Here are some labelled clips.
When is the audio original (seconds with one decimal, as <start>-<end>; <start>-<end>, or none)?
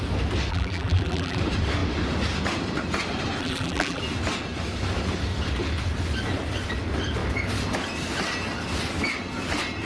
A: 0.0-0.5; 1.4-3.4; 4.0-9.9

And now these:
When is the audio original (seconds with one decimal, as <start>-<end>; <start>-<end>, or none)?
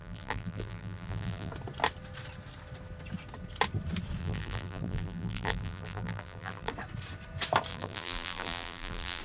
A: 1.5-4.2; 6.7-7.7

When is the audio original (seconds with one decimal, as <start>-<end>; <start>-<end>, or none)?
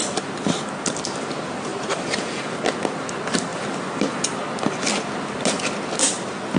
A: 0.0-1.7; 2.4-6.6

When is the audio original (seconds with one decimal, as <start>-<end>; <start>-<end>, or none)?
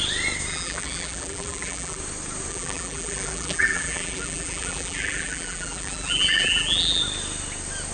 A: 0.0-0.5; 2.0-2.5; 7.0-7.9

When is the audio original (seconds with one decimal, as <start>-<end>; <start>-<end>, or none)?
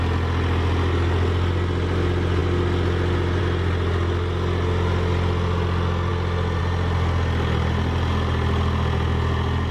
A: 0.0-9.7